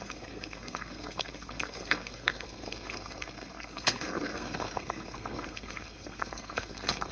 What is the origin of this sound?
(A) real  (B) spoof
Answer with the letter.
B